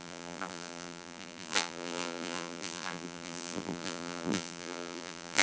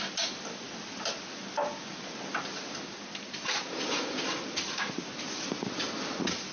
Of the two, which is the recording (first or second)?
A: second